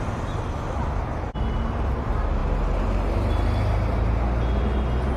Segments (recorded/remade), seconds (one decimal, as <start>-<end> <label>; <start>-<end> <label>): 0.0-5.2 recorded